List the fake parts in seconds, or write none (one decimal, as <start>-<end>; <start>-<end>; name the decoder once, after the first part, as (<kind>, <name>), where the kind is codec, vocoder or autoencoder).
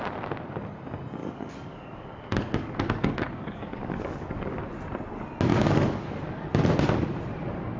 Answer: 1.2-4.6 (codec, DAC); 5.5-6.2